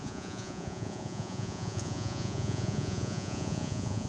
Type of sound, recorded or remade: remade